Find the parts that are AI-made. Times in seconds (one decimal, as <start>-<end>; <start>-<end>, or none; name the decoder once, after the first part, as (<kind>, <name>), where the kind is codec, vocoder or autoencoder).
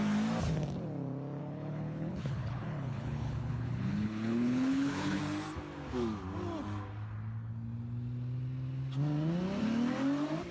1.4-5.2 (codec, HILCodec)